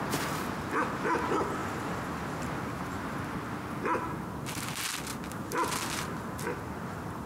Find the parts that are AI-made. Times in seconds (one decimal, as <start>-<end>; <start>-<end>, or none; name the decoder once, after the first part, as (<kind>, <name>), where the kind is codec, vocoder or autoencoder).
none